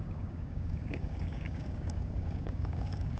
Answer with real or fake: fake